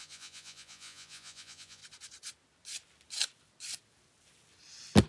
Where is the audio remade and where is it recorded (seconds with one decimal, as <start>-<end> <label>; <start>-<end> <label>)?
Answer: 0.0-1.8 remade; 1.8-5.1 recorded